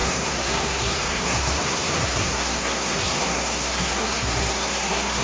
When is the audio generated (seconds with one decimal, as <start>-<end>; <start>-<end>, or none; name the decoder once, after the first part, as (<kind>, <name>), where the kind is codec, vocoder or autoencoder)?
0.0-5.2 (codec, SNAC)